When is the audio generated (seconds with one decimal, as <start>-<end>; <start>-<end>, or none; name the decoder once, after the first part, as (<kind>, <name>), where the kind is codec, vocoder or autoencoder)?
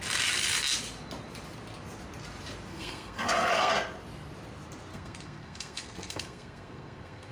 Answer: 2.7-3.7 (codec, SNAC); 4.9-7.3